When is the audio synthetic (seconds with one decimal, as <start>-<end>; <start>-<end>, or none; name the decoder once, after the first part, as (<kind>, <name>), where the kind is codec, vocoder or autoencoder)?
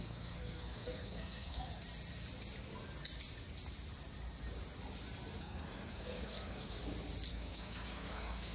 0.0-1.7 (codec, SNAC); 5.4-6.8; 7.3-8.5